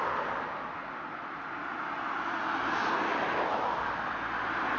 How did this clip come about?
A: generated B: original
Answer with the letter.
B